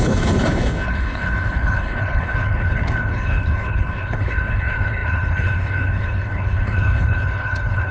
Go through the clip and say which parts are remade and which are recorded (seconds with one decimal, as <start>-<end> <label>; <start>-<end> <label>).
0.0-7.9 remade